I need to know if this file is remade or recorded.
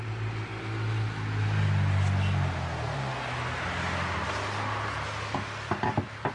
recorded